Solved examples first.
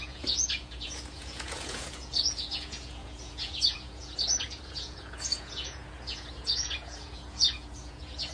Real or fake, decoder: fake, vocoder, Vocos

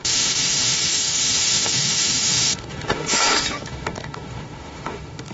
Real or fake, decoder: fake, autoencoder, DAC-VAE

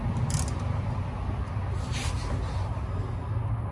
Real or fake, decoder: real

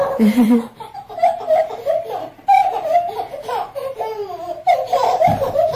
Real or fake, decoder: fake, vocoder, BigVGAN v2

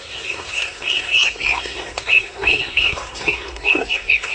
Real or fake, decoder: fake, codec, SNAC